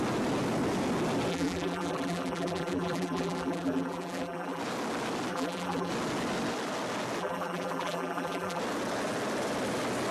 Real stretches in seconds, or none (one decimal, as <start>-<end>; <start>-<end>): 0.0-1.3; 4.6-5.3; 5.9-7.2; 8.6-10.1